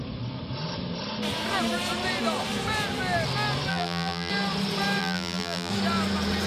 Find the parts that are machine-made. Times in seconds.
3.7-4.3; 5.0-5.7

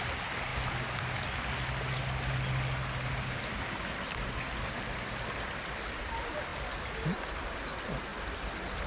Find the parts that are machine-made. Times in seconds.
none

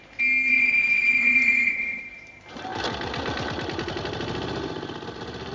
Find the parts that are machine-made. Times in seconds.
0.5-2.0

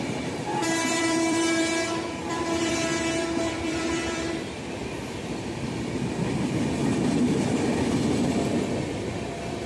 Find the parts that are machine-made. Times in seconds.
0.0-4.8; 7.5-9.7